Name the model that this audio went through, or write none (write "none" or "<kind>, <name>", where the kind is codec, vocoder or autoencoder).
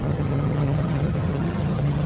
vocoder, HiFi-GAN